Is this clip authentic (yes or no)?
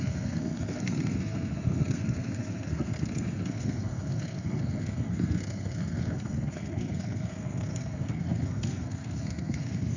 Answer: no